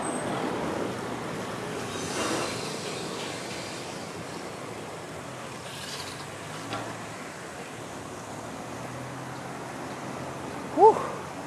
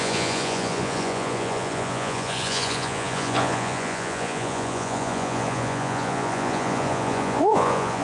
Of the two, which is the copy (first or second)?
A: second